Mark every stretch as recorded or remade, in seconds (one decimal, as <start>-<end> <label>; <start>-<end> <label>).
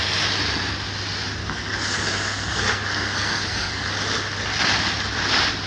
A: 0.0-1.4 recorded; 1.4-3.9 remade; 3.9-5.7 recorded